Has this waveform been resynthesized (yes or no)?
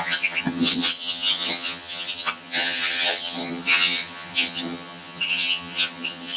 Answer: yes